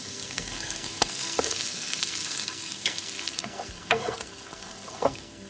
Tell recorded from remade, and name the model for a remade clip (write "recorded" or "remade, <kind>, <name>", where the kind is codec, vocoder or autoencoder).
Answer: remade, codec, SNAC